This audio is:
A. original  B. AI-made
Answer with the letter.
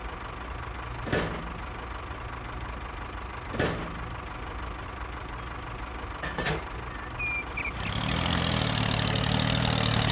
A